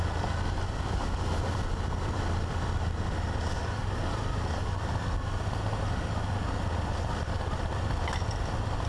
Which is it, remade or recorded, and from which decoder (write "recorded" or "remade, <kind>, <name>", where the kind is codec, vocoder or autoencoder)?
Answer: recorded